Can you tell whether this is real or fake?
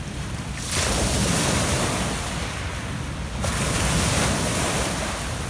real